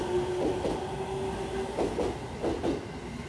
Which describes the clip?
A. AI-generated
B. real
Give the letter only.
B